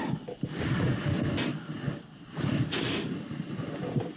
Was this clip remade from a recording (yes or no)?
no